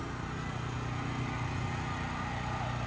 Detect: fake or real real